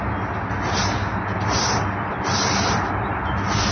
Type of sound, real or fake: real